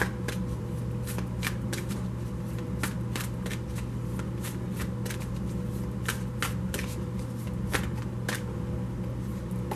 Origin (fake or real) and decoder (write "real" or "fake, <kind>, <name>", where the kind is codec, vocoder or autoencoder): real